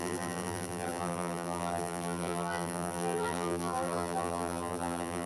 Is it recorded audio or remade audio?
remade